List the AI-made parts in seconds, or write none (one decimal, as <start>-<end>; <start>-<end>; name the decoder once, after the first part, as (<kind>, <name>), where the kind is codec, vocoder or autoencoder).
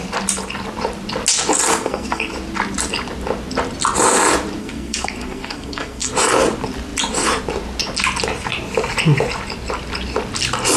1.7-2.3 (codec, SNAC); 4.6-6.1